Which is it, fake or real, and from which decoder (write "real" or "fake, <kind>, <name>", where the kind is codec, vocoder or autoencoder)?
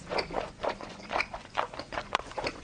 fake, vocoder, Vocos